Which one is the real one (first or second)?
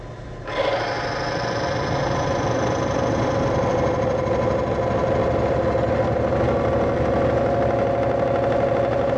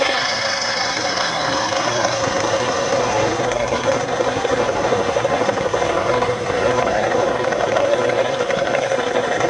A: first